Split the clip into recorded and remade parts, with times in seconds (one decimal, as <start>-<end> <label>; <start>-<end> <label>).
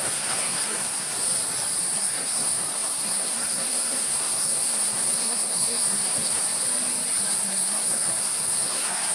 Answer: 0.0-1.1 remade; 1.1-1.8 recorded; 1.8-6.4 remade; 6.4-7.3 recorded; 7.3-9.1 remade